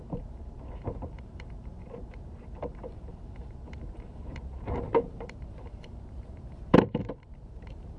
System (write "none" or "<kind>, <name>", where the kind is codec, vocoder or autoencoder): vocoder, BigVGAN v2